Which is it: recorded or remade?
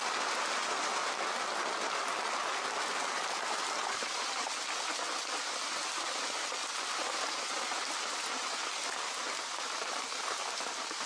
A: recorded